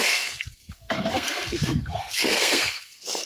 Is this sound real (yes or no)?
no